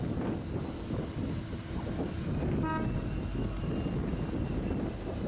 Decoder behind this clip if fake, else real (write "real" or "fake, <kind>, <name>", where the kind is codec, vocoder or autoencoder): real